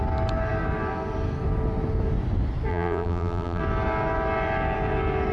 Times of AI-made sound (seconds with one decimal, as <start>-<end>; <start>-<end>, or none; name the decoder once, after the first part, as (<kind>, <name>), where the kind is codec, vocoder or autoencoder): 2.7-3.6 (vocoder, BigVGAN v2)